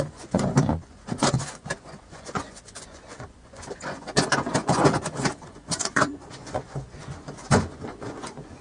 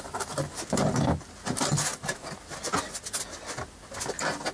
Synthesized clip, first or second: first